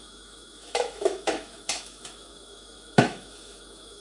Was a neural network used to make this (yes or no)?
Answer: yes